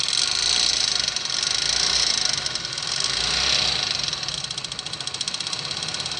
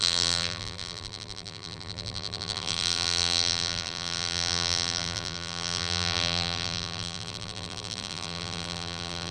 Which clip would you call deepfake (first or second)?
second